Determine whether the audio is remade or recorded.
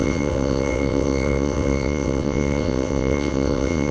remade